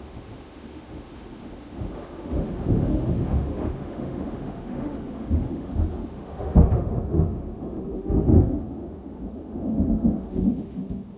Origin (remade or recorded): remade